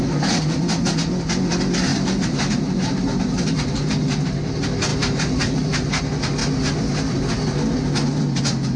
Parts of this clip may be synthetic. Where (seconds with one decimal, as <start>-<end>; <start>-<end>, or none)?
1.9-3.9; 4.9-6.0